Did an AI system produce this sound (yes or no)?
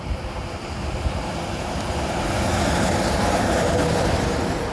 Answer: yes